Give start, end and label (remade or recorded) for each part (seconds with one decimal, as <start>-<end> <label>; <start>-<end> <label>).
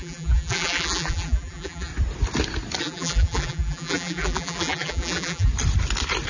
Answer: 0.0-1.9 remade; 1.9-2.8 recorded; 2.8-5.5 remade; 5.5-6.3 recorded